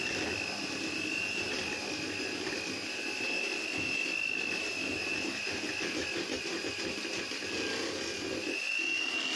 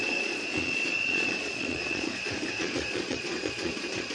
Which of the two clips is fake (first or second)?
second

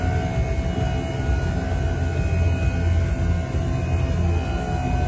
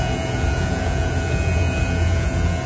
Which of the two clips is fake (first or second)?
second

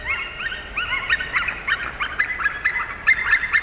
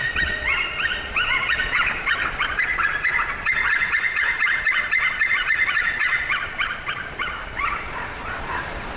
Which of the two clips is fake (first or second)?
second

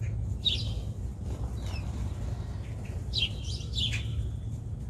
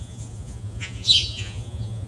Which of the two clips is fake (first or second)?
second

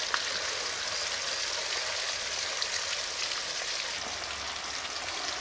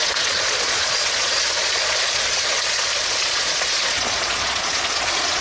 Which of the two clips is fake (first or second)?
second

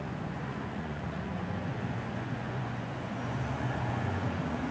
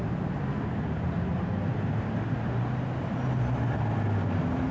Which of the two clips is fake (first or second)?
first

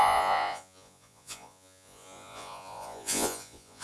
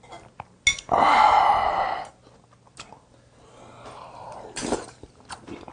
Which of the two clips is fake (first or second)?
first